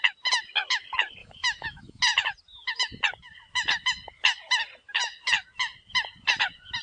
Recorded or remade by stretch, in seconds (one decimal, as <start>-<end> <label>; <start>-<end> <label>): 0.0-1.2 recorded; 1.2-2.0 remade; 2.0-6.8 recorded